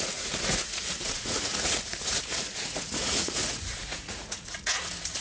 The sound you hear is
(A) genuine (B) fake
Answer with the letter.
B